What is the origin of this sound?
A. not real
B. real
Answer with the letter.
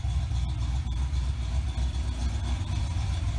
B